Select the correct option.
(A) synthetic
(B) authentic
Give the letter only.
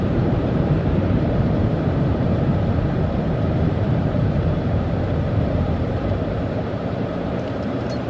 A